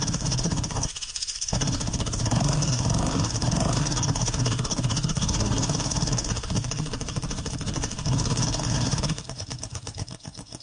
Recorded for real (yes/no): no